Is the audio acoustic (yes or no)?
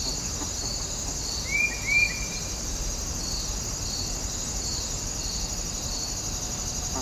yes